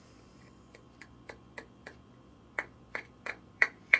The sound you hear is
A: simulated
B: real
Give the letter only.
A